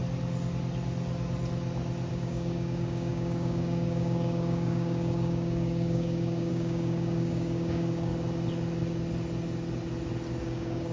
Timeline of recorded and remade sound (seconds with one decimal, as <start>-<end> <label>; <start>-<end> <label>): 0.0-2.1 recorded; 2.1-8.1 remade; 8.1-10.4 recorded; 10.4-10.9 remade